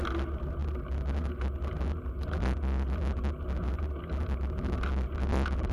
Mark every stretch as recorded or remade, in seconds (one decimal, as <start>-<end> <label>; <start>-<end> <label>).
0.0-5.7 recorded